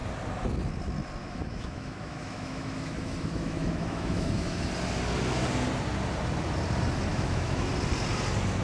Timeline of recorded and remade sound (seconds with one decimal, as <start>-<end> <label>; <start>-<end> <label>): 0.0-1.2 recorded; 1.2-4.7 remade; 4.7-7.1 recorded; 7.1-7.7 remade; 7.7-8.6 recorded